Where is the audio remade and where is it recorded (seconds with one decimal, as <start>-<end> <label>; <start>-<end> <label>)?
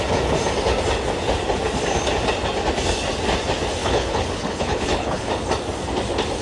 0.0-3.8 recorded; 3.8-5.3 remade; 5.3-6.4 recorded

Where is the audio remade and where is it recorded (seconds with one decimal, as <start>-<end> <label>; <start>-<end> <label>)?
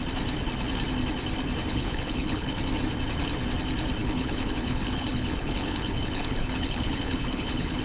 0.0-1.7 recorded; 1.7-2.6 remade; 2.6-4.0 recorded; 4.0-7.8 remade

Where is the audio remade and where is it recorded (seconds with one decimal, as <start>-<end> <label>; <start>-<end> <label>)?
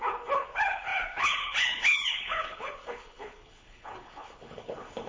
0.0-5.1 remade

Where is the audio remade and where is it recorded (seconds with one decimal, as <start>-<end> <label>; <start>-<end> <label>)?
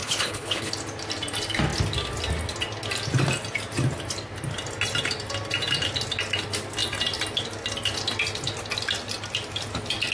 0.0-0.7 remade; 0.7-10.1 recorded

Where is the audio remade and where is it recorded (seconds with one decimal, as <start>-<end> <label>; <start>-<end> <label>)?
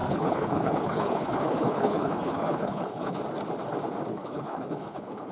0.0-3.2 remade; 3.2-4.1 recorded; 4.1-5.3 remade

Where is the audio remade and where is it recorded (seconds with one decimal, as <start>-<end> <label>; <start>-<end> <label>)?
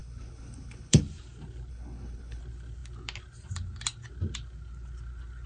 0.0-1.0 remade; 1.0-1.7 recorded; 1.7-2.4 remade; 2.4-5.5 recorded